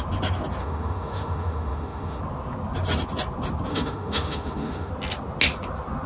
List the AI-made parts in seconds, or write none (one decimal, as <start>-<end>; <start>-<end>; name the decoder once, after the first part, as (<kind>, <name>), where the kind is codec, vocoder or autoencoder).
0.6-2.2 (autoencoder, DAC-VAE); 3.7-4.9